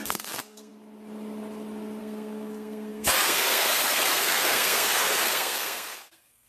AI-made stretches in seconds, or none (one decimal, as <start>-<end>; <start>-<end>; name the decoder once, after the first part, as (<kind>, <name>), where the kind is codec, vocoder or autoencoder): 0.0-0.7 (codec, SNAC); 2.0-6.5